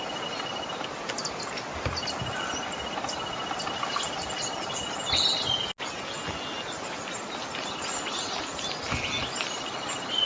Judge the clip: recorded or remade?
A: recorded